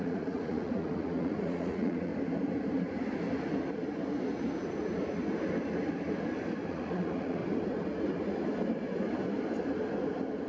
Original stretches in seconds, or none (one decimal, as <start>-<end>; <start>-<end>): 2.1-6.7; 7.4-10.5